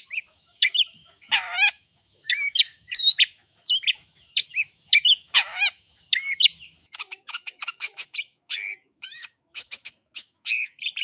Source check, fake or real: fake